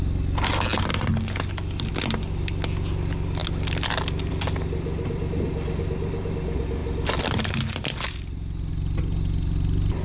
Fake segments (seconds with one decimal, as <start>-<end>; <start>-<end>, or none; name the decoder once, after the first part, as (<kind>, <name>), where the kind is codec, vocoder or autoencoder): none